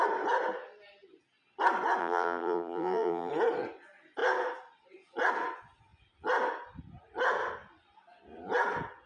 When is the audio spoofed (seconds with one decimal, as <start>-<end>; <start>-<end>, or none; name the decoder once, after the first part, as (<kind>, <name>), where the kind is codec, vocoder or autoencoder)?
2.0-3.3 (vocoder, BigVGAN v2)